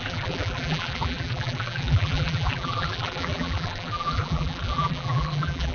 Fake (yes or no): yes